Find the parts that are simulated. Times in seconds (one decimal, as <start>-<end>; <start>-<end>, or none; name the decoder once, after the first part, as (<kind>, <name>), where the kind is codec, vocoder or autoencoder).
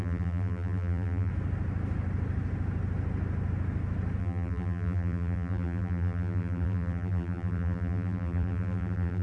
0.0-1.3 (vocoder, BigVGAN v2); 4.2-9.2